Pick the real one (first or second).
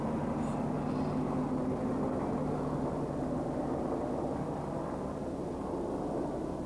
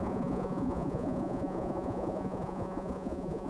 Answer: first